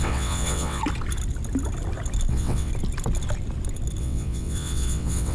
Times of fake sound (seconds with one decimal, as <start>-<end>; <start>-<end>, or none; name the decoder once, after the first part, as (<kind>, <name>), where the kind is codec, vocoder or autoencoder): 0.0-0.8 (vocoder, WaveNeXt); 2.3-2.7; 4.0-5.3